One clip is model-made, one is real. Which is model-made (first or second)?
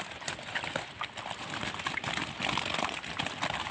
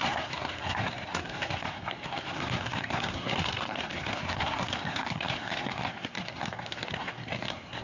second